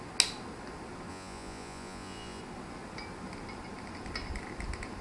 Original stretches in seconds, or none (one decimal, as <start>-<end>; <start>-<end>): 0.0-1.1; 2.4-5.0